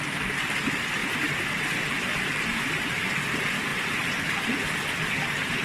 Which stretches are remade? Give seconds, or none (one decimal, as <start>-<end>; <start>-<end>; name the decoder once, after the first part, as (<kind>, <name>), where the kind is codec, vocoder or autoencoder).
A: none